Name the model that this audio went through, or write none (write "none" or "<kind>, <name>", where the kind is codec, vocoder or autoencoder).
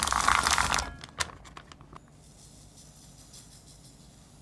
none